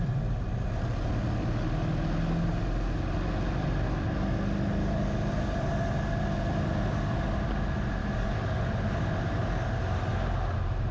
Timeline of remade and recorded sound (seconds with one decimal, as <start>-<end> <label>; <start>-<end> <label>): 0.0-8.0 recorded; 8.0-8.6 remade; 8.6-10.9 recorded